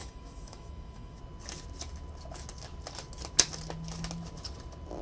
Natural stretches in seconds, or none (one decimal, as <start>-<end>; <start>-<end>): 1.2-5.0